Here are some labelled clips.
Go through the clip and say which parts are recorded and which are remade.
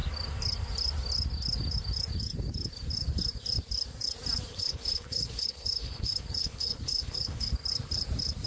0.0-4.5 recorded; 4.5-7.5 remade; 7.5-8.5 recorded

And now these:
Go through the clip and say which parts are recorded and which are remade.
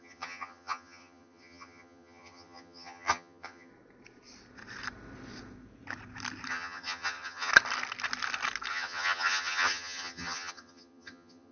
0.0-3.7 remade; 3.7-6.5 recorded; 6.5-7.5 remade; 7.5-8.7 recorded; 8.7-11.5 remade